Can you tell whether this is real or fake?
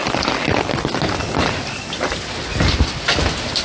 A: real